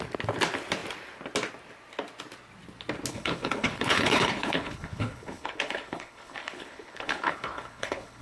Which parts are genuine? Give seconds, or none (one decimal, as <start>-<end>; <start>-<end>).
0.0-3.1